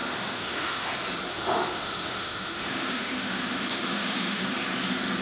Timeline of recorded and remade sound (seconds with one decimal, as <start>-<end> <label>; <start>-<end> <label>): 0.0-0.9 remade; 0.9-1.3 recorded; 1.3-4.4 remade; 4.4-5.2 recorded